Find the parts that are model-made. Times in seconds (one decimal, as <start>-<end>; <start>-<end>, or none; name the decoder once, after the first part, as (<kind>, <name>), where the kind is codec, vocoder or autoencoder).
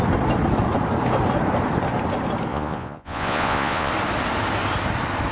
2.5-3.9 (vocoder, Vocos)